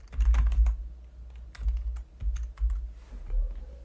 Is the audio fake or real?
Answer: real